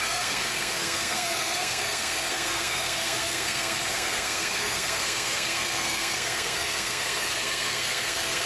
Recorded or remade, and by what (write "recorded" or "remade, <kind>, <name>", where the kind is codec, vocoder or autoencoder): remade, codec, SNAC